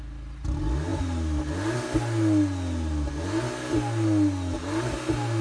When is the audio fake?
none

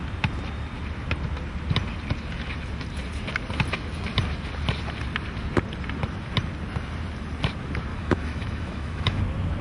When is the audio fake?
7.9-9.2

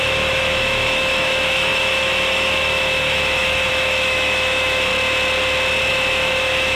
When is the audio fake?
0.0-4.9; 5.9-6.7

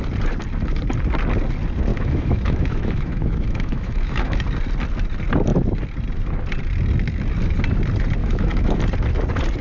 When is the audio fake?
1.9-4.4; 8.2-8.8

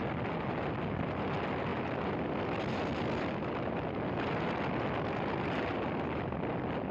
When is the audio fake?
none

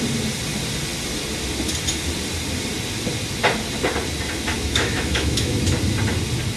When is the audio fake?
4.5-5.7